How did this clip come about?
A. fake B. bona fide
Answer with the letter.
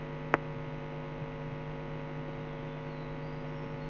B